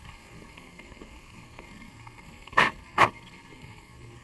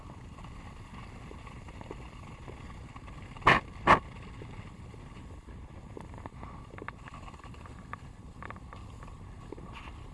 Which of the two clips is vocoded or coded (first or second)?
first